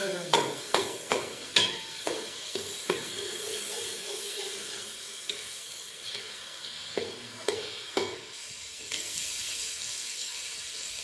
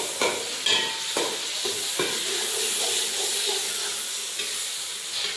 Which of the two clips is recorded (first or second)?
second